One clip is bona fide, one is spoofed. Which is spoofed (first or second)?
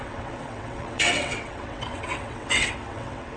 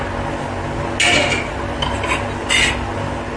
first